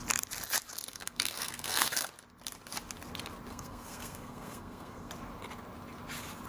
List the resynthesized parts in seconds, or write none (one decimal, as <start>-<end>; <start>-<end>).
0.9-2.1; 3.5-5.1